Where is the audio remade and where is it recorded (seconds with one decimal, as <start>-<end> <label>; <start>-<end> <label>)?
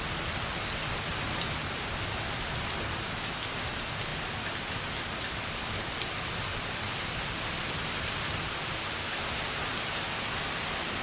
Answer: 0.0-11.0 recorded